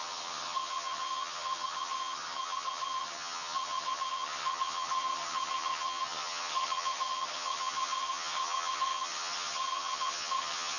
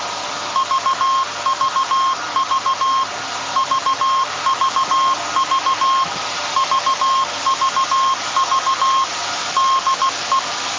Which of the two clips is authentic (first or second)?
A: second